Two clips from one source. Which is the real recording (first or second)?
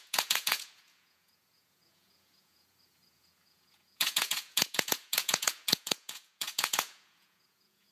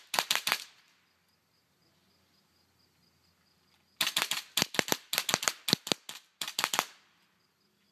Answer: second